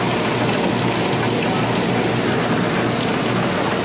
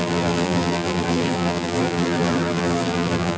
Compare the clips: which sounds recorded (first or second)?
first